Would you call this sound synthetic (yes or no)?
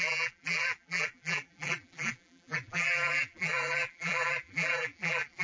yes